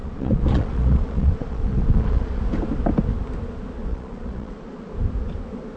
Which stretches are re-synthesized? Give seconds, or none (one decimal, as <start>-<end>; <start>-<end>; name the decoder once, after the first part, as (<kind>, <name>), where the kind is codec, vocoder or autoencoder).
0.0-2.4 (vocoder, Vocos); 3.9-4.9